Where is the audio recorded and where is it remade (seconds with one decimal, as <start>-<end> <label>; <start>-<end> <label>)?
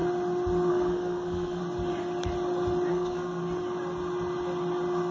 0.0-0.7 recorded; 0.7-1.6 remade; 1.6-2.9 recorded; 2.9-3.4 remade; 3.4-5.1 recorded